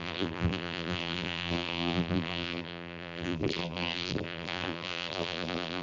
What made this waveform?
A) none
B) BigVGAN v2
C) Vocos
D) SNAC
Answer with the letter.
B